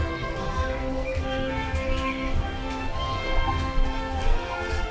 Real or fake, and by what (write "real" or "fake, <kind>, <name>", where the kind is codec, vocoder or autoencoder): fake, codec, SNAC